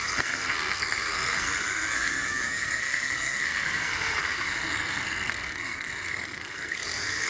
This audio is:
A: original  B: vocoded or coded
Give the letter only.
B